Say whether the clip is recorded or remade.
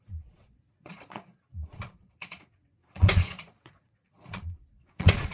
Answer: remade